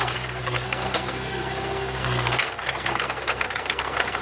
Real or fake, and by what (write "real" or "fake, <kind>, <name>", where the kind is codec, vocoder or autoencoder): fake, codec, SNAC